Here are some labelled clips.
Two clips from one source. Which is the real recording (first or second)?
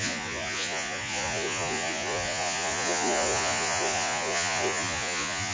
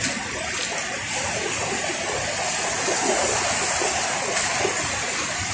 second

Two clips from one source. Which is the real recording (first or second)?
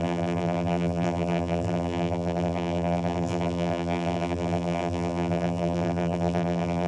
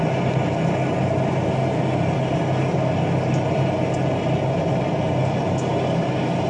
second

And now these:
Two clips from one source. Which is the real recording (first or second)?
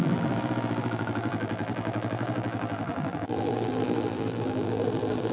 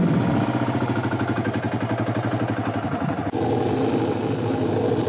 second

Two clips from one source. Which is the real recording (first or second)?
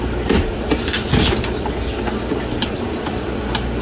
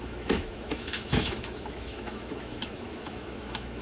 first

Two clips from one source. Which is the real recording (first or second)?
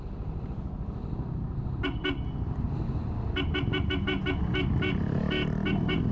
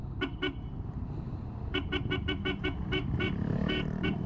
first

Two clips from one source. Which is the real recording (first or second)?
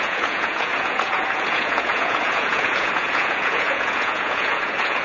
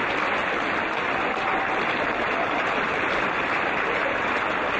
second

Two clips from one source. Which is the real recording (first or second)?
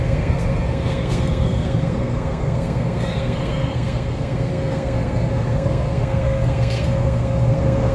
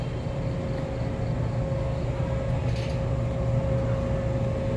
second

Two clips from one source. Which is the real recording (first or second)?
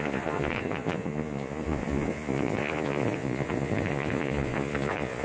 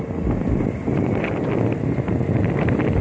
second